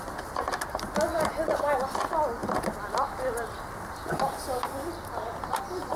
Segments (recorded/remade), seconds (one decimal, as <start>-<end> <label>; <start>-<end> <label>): 0.0-6.0 recorded